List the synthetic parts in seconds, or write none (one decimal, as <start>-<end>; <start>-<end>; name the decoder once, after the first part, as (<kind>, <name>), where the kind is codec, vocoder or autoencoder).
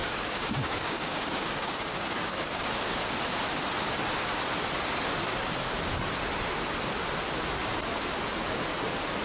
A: 0.0-2.7 (codec, DAC)